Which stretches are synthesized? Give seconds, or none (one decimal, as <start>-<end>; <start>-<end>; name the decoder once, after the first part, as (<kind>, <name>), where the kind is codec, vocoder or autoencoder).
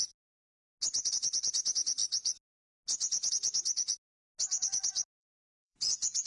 5.2-6.3 (vocoder, Vocos)